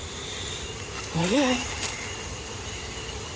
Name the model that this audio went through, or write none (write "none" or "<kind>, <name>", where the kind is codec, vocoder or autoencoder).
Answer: none